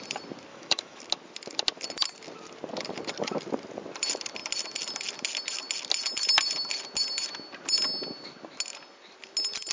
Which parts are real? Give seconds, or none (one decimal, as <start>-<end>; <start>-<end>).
0.0-0.5; 1.0-9.7